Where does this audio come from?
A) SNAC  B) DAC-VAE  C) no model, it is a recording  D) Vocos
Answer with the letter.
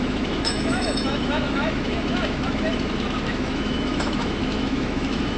B